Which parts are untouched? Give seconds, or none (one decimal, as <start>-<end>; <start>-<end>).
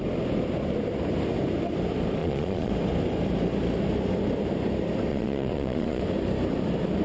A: 0.0-2.2; 2.7-5.1; 6.0-7.0